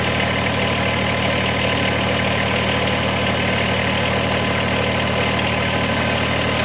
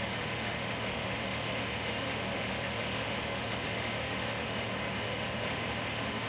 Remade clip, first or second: second